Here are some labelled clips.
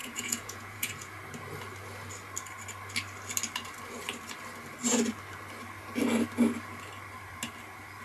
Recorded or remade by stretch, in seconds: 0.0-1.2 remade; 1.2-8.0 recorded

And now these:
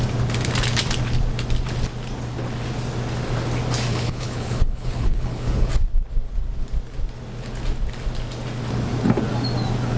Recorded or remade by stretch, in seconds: 0.0-3.9 recorded; 3.9-5.7 remade; 5.7-10.0 recorded